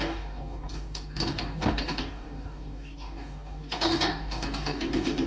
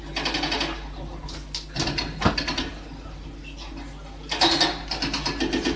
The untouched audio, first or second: second